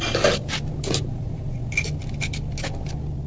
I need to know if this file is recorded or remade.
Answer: recorded